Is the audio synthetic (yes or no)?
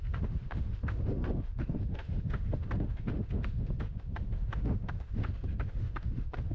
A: yes